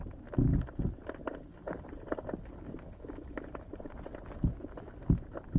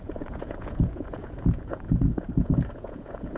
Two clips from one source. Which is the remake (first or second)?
second